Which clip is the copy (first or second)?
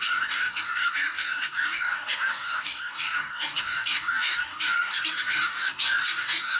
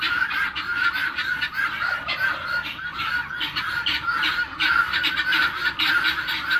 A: first